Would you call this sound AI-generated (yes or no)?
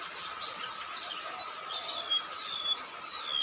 no